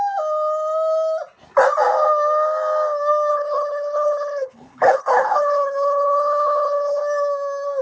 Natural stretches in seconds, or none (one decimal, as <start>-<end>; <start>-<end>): 0.0-3.3; 7.0-7.8